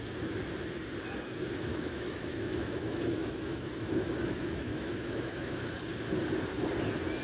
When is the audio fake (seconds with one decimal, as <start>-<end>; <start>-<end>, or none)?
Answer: 1.7-5.7